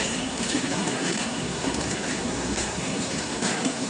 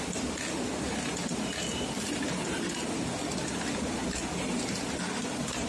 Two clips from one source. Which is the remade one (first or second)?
first